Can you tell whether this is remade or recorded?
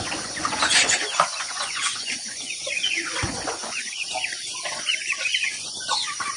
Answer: remade